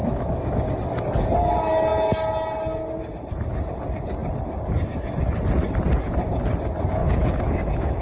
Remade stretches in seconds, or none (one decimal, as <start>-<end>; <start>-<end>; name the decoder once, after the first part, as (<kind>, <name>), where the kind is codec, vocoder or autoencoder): 0.0-0.7 (autoencoder, DAC-VAE); 7.0-8.0